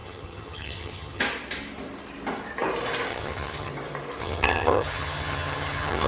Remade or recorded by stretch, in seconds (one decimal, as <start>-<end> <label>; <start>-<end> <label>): 0.0-1.2 remade; 1.2-3.1 recorded; 3.1-3.7 remade; 3.7-4.2 recorded; 4.2-6.1 remade